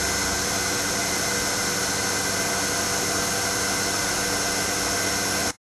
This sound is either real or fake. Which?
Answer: real